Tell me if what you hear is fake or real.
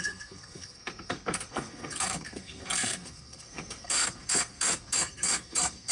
fake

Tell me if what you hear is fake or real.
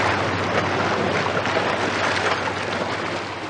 real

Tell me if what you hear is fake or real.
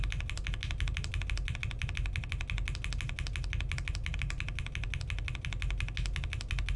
real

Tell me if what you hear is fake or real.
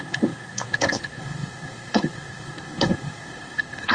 fake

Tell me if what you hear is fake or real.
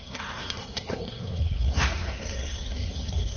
fake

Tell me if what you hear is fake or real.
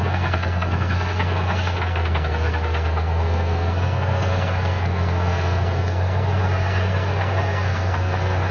fake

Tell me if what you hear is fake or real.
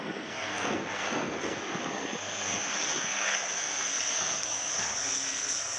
fake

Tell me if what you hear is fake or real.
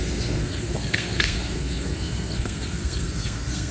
fake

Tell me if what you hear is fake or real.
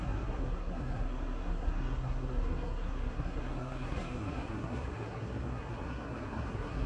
fake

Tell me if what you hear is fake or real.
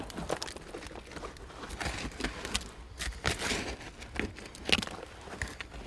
real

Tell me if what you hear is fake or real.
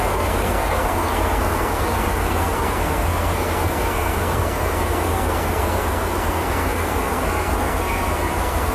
fake